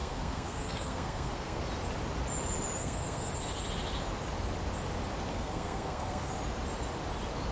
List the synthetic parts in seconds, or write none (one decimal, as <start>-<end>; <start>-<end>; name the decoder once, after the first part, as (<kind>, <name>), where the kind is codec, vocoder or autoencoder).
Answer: 0.0-1.6 (codec, SNAC); 2.8-3.3; 5.3-6.3